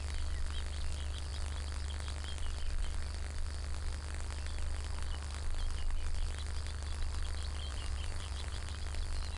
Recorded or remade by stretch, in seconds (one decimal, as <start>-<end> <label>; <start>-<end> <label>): 0.0-7.7 recorded; 7.7-8.6 remade; 8.6-9.4 recorded